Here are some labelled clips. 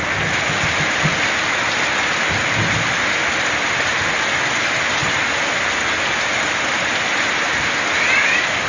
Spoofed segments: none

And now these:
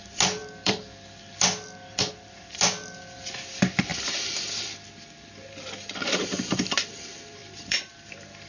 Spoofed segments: 0.4-1.2 (vocoder, BigVGAN v2); 7.4-7.9

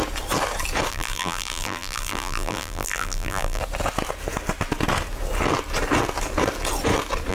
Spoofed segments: 0.9-3.6 (vocoder, BigVGAN v2)

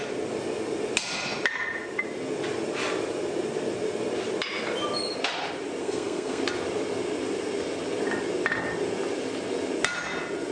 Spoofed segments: 5.8-6.4 (codec, SNAC)

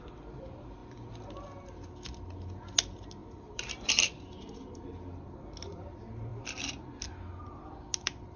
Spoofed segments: 0.8-1.3 (vocoder, BigVGAN v2); 3.2-4.3

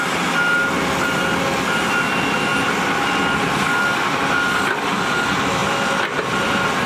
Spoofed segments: none

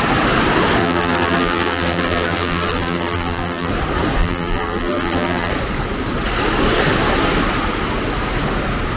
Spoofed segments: 0.8-3.7 (vocoder, BigVGAN v2); 4.2-5.5